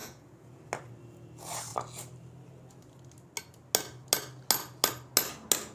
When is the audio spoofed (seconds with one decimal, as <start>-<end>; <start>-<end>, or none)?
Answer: 0.0-0.6